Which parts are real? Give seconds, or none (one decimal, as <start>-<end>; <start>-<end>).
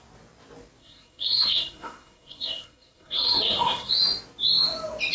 0.0-0.8; 3.9-5.1